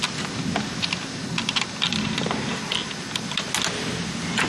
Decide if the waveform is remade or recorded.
recorded